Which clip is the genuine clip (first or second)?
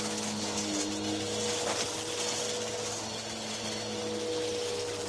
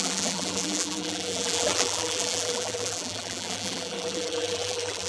first